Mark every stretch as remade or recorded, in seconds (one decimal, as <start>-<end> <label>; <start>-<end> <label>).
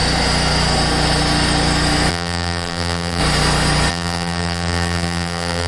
0.0-2.1 recorded; 2.1-3.2 remade; 3.2-3.9 recorded; 3.9-5.7 remade